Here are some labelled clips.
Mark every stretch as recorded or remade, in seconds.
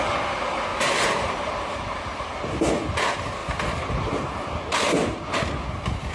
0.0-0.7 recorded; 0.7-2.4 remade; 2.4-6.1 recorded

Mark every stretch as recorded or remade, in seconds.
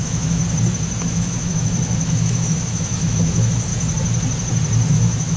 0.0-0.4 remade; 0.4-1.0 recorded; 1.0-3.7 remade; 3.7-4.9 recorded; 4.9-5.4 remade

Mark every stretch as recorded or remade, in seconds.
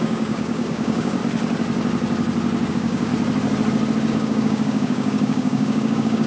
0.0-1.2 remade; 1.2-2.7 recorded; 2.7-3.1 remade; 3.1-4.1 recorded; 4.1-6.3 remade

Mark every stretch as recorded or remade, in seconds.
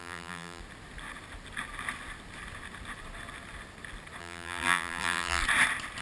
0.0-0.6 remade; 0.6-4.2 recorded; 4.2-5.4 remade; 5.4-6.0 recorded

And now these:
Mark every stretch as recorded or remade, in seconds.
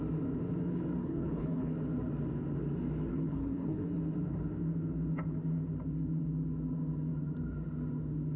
0.0-1.0 recorded; 1.0-1.7 remade; 1.7-3.1 recorded; 3.1-3.9 remade; 3.9-8.4 recorded